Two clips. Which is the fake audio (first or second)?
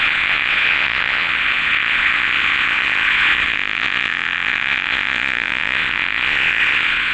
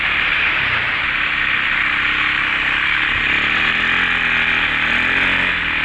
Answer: first